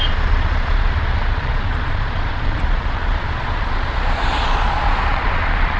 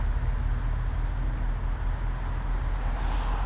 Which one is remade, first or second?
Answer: first